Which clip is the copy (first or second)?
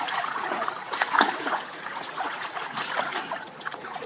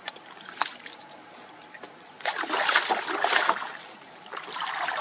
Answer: first